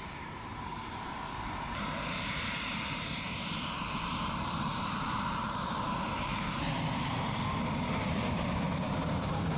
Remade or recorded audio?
remade